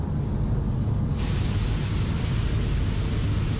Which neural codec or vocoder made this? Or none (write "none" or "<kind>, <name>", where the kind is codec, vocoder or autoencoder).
none